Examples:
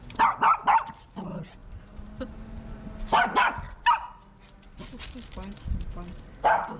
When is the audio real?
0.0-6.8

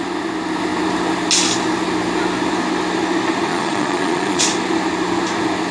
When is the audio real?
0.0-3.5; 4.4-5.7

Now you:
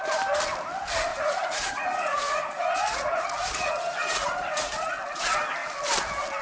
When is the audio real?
0.0-1.1; 4.9-6.4

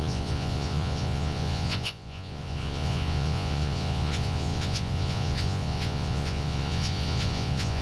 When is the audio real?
none

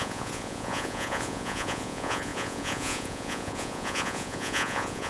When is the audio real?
none

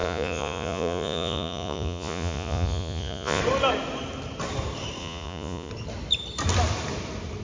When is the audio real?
3.4-5.0; 5.7-7.4

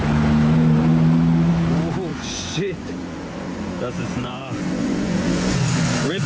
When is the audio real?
0.0-2.1

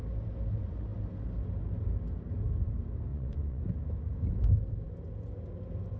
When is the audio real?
0.0-3.1; 3.6-6.0